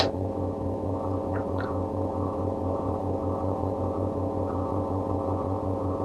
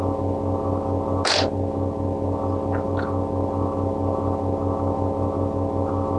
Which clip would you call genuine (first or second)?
second